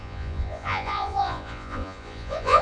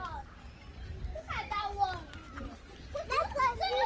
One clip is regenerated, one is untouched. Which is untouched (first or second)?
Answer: second